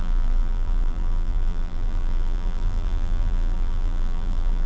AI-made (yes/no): yes